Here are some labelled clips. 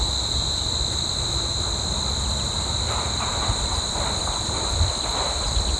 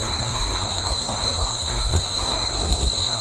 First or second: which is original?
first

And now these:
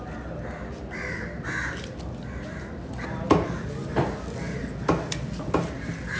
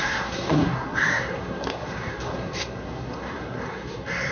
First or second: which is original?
first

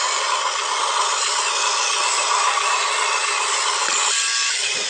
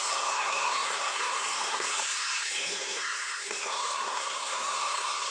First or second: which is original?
first